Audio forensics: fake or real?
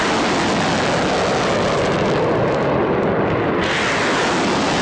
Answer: real